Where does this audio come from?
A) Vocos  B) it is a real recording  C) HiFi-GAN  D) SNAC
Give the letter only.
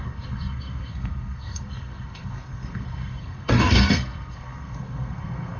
D